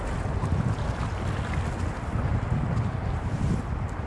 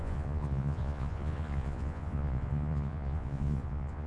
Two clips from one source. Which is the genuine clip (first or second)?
first